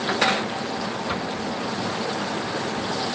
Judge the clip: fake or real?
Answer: real